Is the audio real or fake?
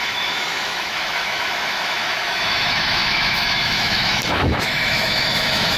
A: fake